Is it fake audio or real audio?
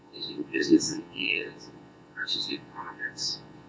fake